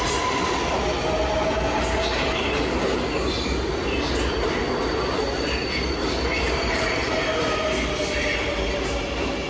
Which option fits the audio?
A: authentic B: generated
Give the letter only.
A